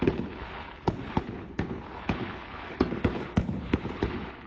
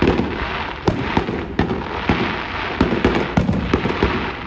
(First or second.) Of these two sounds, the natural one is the second